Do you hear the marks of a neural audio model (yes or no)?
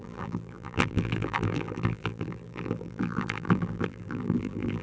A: yes